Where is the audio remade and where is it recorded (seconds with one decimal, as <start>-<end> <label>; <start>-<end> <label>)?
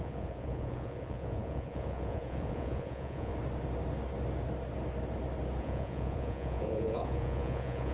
0.0-3.3 remade; 3.3-5.6 recorded; 5.6-7.9 remade